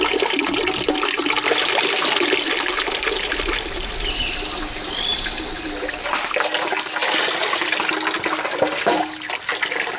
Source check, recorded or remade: recorded